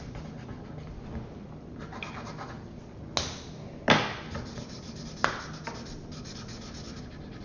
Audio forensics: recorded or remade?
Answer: recorded